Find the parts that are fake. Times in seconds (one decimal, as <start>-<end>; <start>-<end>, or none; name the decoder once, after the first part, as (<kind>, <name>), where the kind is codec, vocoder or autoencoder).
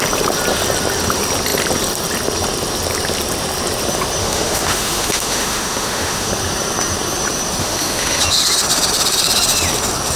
4.2-6.3 (autoencoder, DAC-VAE); 7.6-8.2